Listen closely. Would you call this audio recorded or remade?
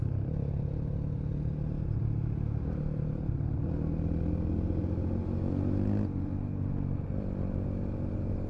recorded